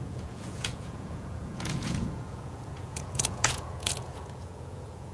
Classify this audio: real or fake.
fake